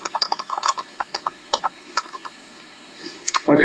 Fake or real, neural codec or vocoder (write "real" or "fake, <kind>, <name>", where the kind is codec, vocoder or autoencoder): fake, codec, SNAC